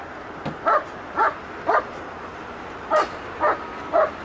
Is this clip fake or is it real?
real